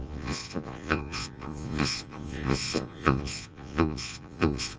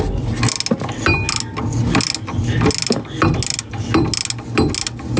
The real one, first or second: second